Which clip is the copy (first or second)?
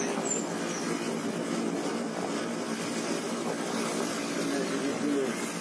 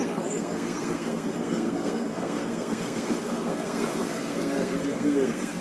second